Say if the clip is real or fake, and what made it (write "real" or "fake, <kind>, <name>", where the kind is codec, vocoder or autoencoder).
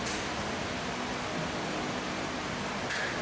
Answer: real